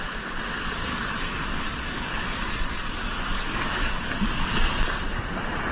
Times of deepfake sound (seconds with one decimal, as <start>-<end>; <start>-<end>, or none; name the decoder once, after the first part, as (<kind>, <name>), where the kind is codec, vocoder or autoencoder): 0.9-4.0 (codec, DAC)